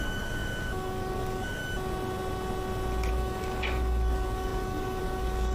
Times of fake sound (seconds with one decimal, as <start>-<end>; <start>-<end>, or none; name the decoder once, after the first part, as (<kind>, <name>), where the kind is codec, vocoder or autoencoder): 0.0-1.6 (codec, DAC); 3.1-5.5